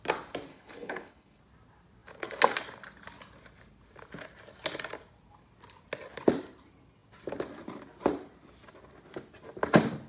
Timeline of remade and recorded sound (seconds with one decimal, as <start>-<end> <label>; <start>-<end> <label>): 0.0-0.5 recorded; 0.5-1.4 remade; 1.4-10.1 recorded